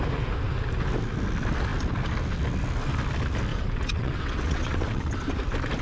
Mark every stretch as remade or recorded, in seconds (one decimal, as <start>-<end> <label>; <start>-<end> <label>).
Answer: 0.0-3.5 recorded; 3.5-5.1 remade; 5.1-5.8 recorded